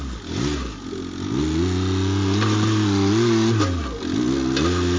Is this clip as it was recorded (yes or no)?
yes